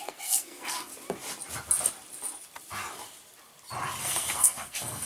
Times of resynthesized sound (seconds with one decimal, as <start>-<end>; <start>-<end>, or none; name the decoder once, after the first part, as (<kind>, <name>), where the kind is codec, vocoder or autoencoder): 0.0-0.9 (codec, SNAC); 4.0-5.1